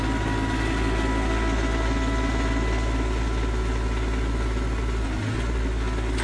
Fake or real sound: real